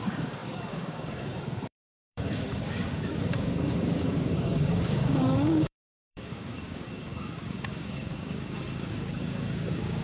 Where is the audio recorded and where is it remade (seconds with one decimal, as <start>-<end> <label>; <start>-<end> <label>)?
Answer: 0.0-10.0 remade